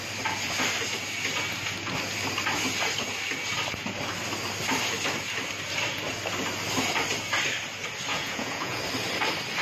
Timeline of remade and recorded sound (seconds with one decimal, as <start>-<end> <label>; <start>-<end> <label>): 0.0-8.1 recorded; 8.1-8.8 remade; 8.8-9.6 recorded